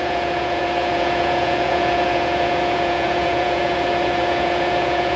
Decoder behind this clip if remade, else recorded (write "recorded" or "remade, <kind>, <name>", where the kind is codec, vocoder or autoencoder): remade, vocoder, Vocos